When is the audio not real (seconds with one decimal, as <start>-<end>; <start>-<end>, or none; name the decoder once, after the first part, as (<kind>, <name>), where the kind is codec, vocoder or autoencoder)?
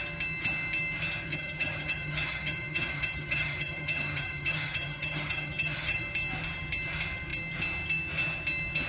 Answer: 1.3-6.0 (vocoder, HiFi-GAN)